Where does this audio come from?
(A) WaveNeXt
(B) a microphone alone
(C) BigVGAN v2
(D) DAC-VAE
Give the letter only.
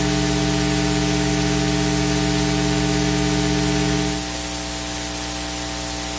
B